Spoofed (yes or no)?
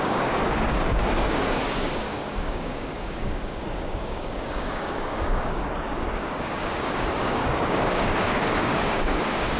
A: yes